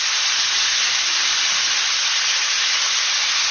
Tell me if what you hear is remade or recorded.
recorded